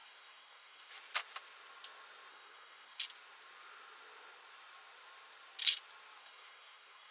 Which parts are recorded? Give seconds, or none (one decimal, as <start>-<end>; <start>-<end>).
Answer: 0.9-2.3; 3.0-6.2